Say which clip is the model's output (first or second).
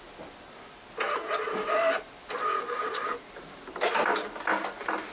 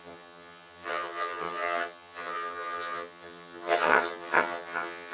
second